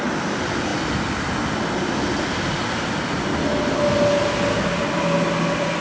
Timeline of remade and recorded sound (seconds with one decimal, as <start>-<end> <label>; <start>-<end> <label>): 0.0-5.8 recorded